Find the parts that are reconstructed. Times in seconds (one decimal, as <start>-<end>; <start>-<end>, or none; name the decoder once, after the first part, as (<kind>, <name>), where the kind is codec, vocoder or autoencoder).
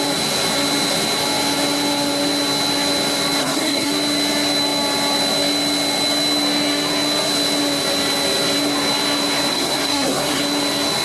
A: 3.4-3.9 (codec, SNAC); 9.5-10.4